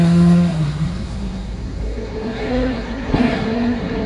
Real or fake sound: fake